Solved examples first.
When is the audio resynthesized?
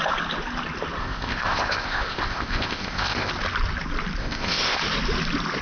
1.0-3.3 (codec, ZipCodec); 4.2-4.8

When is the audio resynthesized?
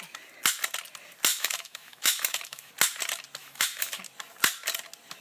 1.3-2.7 (autoencoder, DAC-VAE); 3.4-4.0